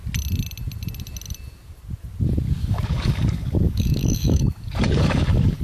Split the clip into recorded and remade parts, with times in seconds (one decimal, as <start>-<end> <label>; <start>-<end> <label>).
0.0-2.6 recorded; 2.6-5.6 remade